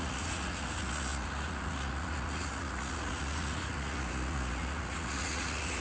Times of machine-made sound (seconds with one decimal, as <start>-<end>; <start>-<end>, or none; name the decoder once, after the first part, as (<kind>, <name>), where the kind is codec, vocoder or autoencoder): 0.0-5.8 (vocoder, Vocos)